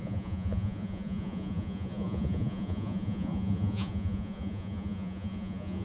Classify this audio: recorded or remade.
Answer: remade